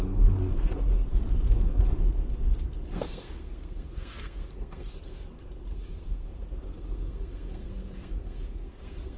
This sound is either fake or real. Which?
fake